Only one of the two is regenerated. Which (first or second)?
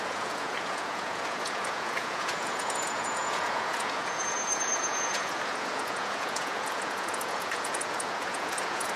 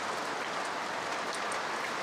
first